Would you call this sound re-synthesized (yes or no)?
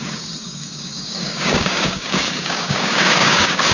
yes